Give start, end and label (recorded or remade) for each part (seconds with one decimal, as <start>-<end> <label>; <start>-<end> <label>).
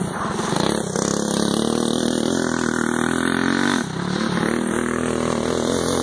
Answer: 0.0-6.0 recorded